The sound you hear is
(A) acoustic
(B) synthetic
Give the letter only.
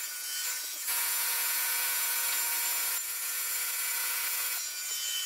B